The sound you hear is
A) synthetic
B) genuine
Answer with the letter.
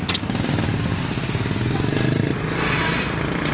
B